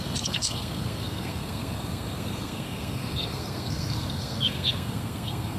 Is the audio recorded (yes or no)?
no